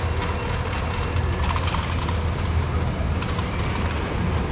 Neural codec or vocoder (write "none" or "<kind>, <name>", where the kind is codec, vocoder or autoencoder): none